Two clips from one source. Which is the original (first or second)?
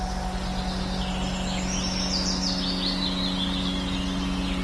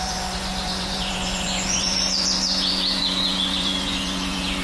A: first